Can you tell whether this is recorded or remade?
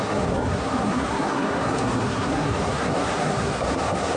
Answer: remade